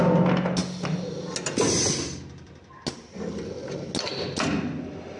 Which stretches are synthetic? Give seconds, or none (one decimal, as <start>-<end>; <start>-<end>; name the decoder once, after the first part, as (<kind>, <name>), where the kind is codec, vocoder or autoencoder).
none